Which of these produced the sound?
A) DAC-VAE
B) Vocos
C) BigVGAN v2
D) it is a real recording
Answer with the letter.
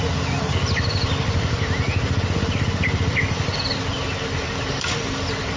D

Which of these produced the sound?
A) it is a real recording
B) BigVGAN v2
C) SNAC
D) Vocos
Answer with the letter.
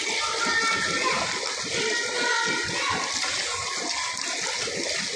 A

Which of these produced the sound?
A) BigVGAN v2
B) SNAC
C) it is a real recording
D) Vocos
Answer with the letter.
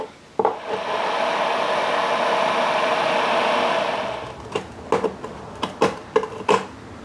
C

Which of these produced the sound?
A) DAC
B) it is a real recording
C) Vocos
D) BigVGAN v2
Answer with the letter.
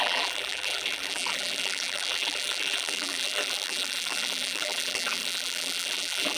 D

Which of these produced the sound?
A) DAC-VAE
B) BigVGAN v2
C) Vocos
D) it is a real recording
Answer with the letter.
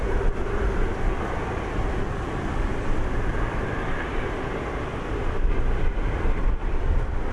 D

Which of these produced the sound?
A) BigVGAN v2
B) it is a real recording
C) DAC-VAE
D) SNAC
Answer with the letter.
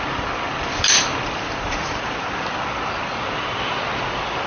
A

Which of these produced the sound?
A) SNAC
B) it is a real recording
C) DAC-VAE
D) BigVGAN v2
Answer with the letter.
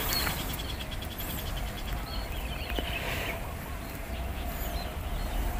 D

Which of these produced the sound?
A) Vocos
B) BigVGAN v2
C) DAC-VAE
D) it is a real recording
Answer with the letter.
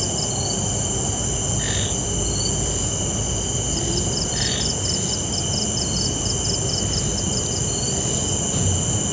D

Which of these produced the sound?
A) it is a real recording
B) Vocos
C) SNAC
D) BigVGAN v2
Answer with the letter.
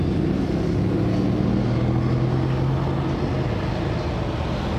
A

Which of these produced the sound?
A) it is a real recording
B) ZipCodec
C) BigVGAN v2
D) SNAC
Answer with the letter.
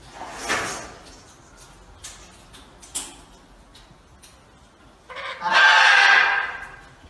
A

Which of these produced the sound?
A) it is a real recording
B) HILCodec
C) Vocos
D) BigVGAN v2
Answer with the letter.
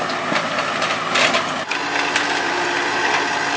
A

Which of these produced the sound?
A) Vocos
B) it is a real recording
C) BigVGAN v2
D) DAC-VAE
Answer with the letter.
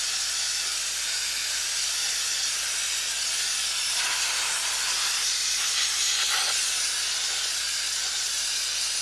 B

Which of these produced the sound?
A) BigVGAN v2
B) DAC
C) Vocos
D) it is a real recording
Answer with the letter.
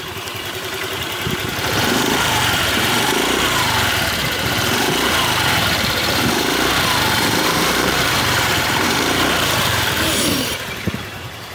A